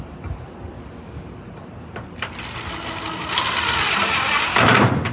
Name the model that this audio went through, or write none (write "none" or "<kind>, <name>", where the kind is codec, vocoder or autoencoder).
none